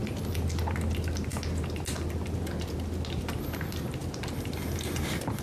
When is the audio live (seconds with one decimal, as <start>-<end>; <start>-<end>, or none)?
0.0-4.0; 4.5-5.4